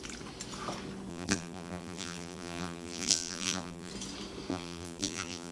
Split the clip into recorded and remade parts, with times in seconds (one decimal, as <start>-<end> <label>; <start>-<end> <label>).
0.0-1.1 recorded; 1.1-3.9 remade; 3.9-4.5 recorded; 4.5-5.5 remade